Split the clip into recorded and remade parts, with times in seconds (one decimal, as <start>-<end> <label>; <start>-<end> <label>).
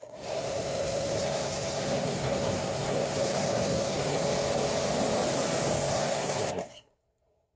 0.0-4.2 remade; 4.2-5.9 recorded; 5.9-7.6 remade